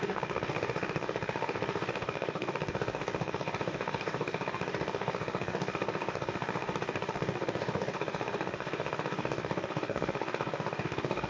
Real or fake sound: fake